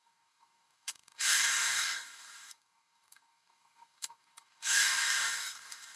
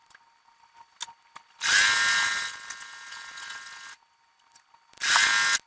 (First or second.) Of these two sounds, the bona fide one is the second